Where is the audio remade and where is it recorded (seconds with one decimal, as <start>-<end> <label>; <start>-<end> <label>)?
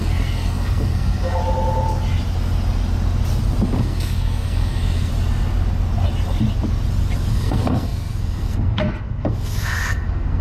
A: 0.0-1.4 remade; 1.4-3.8 recorded; 3.8-5.1 remade; 5.1-7.3 recorded; 7.3-10.4 remade